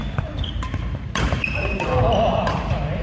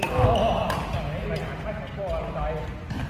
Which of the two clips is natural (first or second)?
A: second